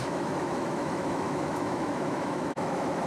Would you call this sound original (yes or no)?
no